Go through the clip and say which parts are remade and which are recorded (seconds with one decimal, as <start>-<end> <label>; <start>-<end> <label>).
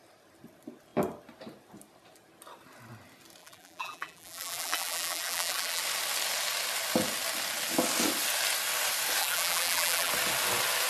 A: 0.0-3.4 recorded; 3.4-5.8 remade; 5.8-9.2 recorded; 9.2-10.1 remade; 10.1-10.9 recorded